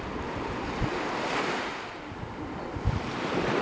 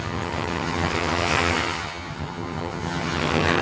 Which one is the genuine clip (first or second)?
first